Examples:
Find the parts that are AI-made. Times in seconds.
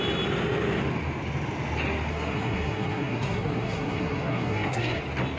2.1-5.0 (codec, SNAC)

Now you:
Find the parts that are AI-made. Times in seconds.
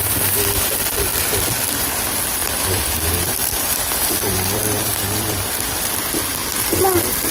2.4-6.1 (vocoder, BigVGAN v2)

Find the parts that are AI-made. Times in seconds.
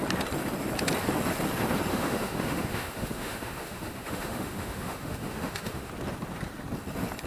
1.9-5.9 (autoencoder, DAC-VAE)